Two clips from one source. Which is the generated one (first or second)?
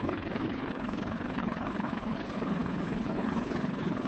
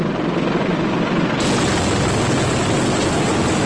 first